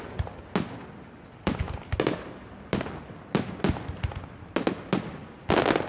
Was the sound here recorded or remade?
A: recorded